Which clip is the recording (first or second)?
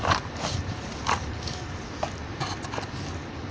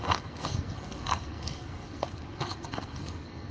first